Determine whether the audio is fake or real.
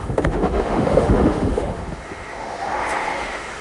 fake